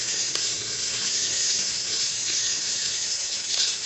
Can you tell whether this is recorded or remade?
remade